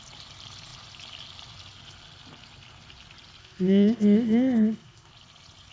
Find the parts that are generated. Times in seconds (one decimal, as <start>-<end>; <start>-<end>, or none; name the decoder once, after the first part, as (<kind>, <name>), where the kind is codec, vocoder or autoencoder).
3.4-5.1 (codec, ZipCodec)

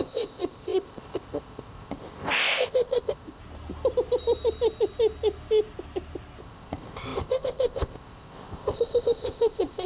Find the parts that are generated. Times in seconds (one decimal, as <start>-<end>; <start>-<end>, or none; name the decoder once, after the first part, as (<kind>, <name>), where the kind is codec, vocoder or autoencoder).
0.0-3.4 (codec, ZipCodec); 6.4-9.9

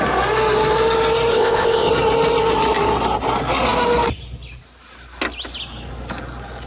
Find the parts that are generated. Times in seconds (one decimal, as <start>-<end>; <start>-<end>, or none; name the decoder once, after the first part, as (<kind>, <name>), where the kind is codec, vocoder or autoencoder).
1.3-1.9 (codec, ZipCodec)

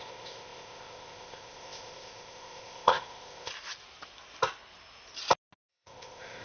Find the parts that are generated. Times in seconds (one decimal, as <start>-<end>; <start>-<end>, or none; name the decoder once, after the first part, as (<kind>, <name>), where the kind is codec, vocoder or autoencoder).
0.0-3.5 (codec, ZipCodec); 5.7-6.4